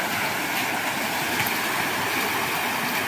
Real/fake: real